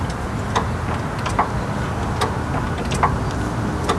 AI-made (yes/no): no